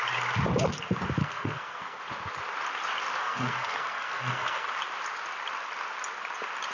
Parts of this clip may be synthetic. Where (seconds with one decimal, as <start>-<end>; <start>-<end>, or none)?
1.2-2.0; 3.2-4.7